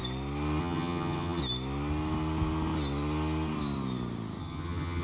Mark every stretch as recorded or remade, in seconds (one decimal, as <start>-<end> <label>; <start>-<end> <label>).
0.0-0.6 recorded; 0.6-1.4 remade; 1.4-4.4 recorded; 4.4-5.0 remade